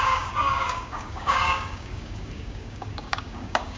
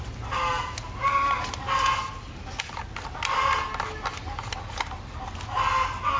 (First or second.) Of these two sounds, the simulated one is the first